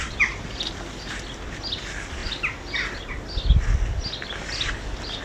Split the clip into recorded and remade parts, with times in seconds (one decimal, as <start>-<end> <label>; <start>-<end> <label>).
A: 0.0-5.2 recorded